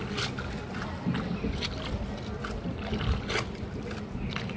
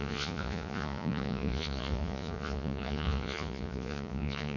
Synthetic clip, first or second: second